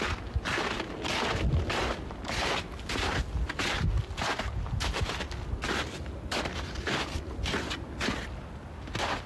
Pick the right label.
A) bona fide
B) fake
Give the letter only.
A